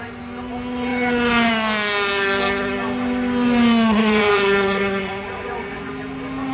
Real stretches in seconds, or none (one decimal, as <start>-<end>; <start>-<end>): 0.0-4.0; 5.9-6.5